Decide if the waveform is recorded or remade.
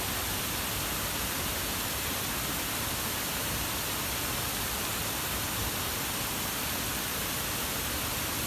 recorded